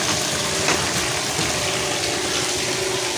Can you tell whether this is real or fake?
real